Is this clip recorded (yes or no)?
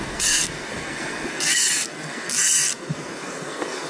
no